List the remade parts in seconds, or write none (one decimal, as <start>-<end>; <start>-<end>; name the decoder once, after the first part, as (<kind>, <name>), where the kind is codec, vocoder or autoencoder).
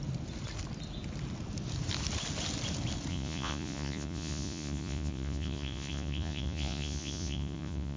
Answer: 3.1-8.0 (vocoder, Vocos)